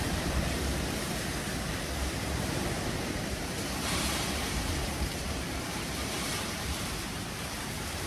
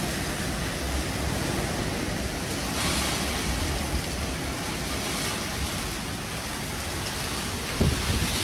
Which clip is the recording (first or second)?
second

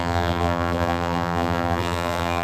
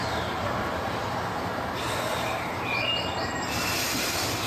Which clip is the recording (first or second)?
second